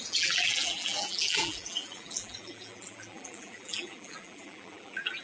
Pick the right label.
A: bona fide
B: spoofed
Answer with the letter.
B